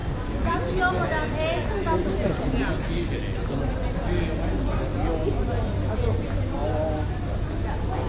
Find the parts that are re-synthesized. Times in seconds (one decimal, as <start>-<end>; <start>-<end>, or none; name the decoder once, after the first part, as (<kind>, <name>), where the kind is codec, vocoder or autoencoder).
none